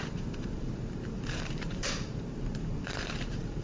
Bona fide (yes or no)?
no